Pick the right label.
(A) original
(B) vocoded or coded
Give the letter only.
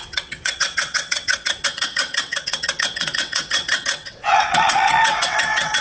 B